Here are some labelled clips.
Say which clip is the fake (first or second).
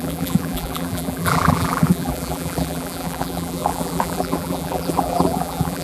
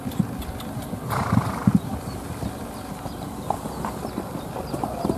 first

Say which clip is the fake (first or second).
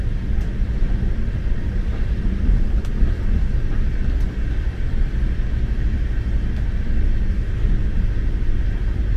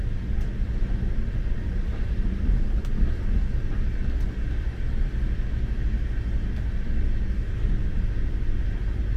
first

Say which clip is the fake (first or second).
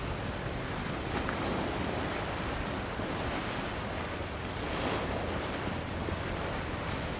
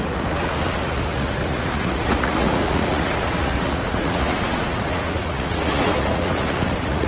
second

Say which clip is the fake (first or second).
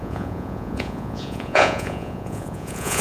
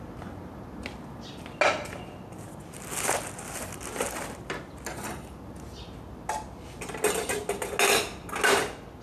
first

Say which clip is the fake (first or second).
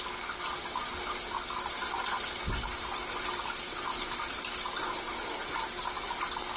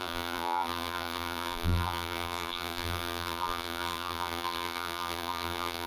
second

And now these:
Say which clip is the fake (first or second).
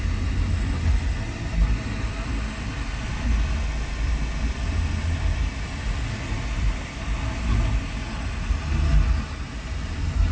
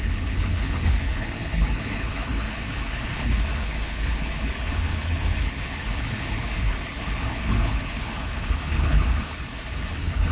second